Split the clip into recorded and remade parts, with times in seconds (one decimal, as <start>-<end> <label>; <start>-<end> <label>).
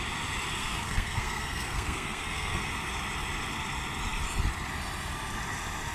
0.0-0.6 recorded; 0.6-2.6 remade; 2.6-5.9 recorded